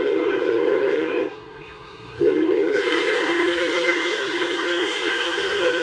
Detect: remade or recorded remade